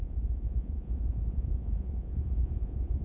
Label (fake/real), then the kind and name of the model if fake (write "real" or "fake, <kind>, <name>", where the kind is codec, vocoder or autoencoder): fake, vocoder, Vocos